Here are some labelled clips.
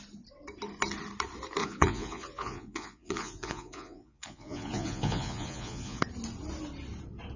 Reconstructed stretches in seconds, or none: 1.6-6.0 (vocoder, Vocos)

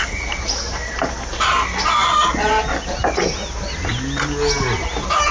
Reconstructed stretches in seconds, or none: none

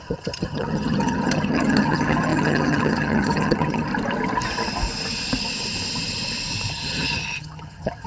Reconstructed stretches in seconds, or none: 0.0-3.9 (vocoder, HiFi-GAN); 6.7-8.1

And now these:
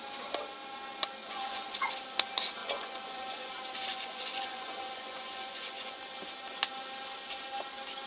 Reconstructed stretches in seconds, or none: 1.2-1.9 (vocoder, Vocos); 2.6-3.5; 3.9-6.0

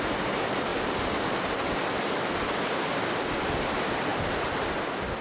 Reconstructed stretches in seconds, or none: 0.7-2.3 (vocoder, BigVGAN v2)